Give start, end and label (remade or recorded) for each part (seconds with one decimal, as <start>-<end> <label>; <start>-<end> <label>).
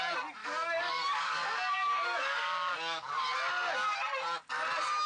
0.0-0.4 recorded; 0.4-3.1 remade; 3.1-5.1 recorded